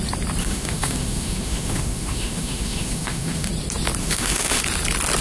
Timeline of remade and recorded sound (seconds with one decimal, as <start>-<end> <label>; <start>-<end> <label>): 0.0-0.4 recorded; 0.4-3.5 remade; 3.5-4.0 recorded; 4.0-4.6 remade; 4.6-5.2 recorded